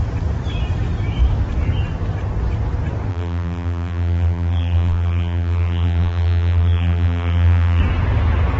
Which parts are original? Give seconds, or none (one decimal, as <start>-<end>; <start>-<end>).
0.0-3.1; 7.8-8.6

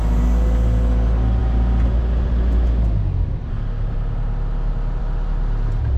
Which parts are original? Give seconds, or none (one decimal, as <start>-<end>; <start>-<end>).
0.0-6.0

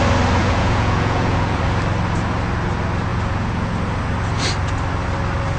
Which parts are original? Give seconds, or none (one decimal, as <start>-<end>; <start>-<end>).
0.0-0.4; 1.6-3.1; 3.7-5.6

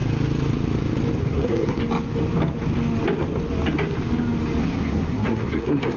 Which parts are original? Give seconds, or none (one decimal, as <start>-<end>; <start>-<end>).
0.0-1.2; 1.8-4.6

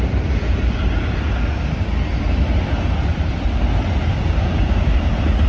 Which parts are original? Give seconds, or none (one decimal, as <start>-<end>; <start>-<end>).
0.0-4.1; 5.1-5.5